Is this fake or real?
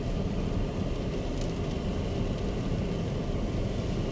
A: real